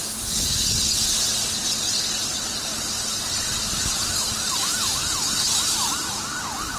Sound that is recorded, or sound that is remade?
recorded